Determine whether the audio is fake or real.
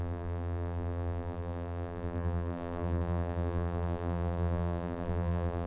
fake